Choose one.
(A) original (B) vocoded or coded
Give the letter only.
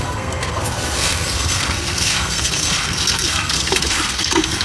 B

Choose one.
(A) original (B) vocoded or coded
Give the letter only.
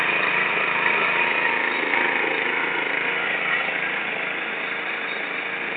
A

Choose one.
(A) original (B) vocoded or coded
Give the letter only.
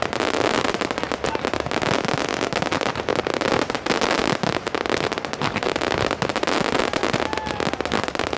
A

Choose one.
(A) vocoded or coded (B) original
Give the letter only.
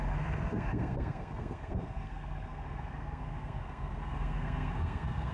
A